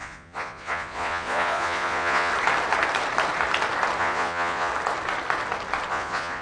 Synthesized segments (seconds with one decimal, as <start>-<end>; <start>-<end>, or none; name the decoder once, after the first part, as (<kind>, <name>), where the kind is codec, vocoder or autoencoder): 0.0-2.3 (vocoder, Vocos); 4.0-4.7; 5.9-6.4